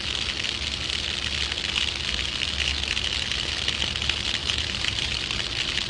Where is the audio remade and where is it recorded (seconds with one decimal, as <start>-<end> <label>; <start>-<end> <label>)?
0.0-4.4 recorded; 4.4-5.2 remade; 5.2-5.9 recorded